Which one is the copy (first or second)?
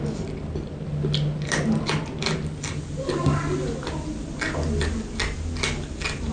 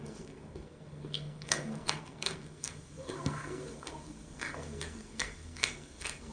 second